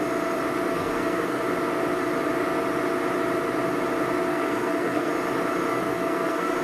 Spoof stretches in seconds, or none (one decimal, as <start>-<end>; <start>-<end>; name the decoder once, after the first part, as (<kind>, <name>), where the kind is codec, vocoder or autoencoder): 0.7-1.4 (codec, SNAC); 4.3-5.1; 5.7-6.6